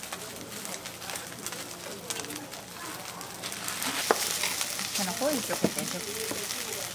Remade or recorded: recorded